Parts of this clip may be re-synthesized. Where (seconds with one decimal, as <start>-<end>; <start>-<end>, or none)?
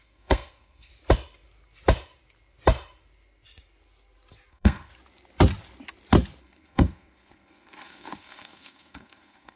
0.0-0.9; 4.5-4.9; 6.4-9.6